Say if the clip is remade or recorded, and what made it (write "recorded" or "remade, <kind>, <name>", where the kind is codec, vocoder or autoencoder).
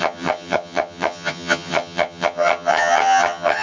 remade, vocoder, HiFi-GAN